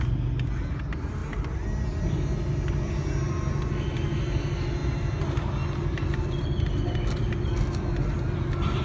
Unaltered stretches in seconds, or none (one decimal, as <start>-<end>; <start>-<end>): 0.0-8.8

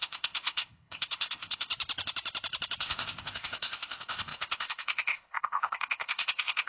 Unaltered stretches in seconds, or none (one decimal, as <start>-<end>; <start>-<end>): 1.7-2.8